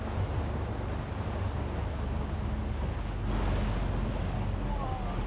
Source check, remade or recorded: recorded